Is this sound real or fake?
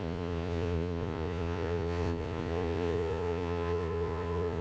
fake